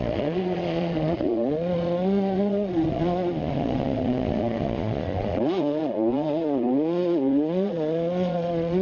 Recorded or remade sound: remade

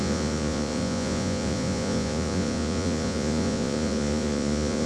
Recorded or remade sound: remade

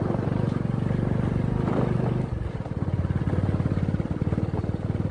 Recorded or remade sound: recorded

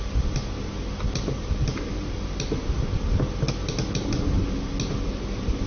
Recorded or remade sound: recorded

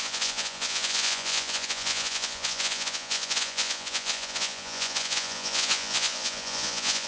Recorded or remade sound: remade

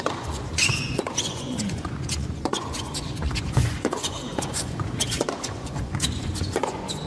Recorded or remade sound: remade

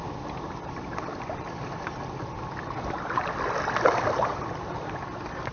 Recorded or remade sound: recorded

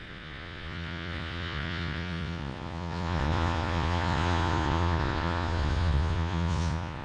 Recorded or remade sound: remade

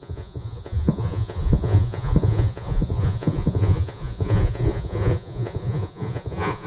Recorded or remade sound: remade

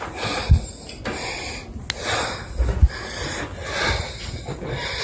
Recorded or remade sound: recorded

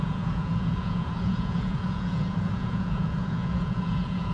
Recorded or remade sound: remade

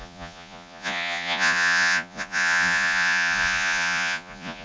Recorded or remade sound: remade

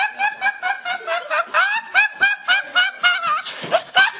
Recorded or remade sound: recorded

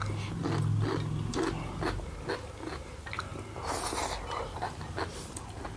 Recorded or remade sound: recorded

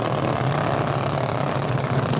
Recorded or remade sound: recorded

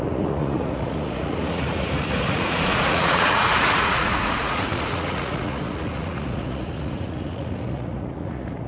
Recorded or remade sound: remade